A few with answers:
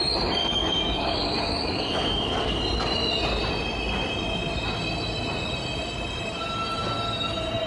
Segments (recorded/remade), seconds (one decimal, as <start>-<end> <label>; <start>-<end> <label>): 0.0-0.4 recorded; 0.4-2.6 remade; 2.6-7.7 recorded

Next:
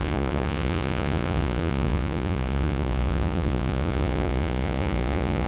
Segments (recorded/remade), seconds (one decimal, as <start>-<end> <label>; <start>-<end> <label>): 0.0-5.5 remade

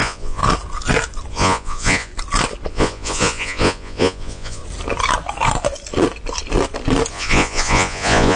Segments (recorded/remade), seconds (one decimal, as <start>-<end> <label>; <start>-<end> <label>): 0.0-0.4 remade; 0.4-1.3 recorded; 1.3-2.1 remade; 2.1-2.7 recorded; 2.7-4.6 remade; 4.6-7.1 recorded; 7.1-8.4 remade

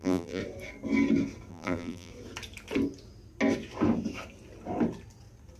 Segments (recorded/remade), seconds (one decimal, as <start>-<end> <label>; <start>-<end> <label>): 0.0-0.4 remade; 0.4-1.5 recorded; 1.5-2.1 remade; 2.1-5.6 recorded

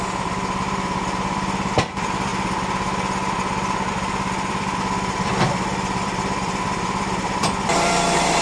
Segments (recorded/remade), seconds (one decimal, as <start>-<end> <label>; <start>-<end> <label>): 0.0-2.3 remade; 2.3-3.9 recorded; 3.9-8.4 remade

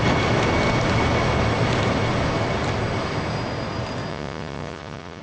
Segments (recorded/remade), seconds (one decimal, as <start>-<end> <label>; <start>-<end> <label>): 0.0-4.1 recorded; 4.1-5.2 remade